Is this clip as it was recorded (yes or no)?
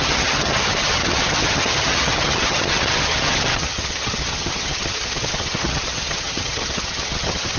no